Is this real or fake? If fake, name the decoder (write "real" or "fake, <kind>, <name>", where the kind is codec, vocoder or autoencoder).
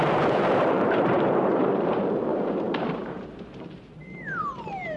fake, vocoder, BigVGAN v2